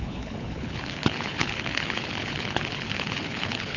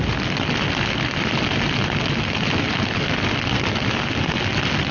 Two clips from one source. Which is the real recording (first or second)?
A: second